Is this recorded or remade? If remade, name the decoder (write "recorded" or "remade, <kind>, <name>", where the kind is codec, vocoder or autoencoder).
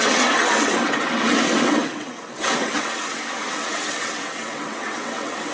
remade, vocoder, WaveNeXt